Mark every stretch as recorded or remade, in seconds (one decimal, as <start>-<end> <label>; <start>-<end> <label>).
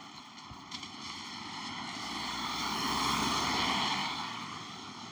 0.0-2.0 recorded; 2.0-3.0 remade; 3.0-4.0 recorded; 4.0-5.1 remade